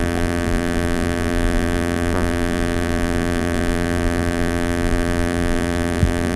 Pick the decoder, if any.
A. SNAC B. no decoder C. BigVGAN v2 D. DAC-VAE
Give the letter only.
C